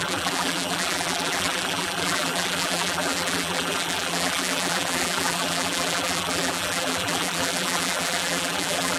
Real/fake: fake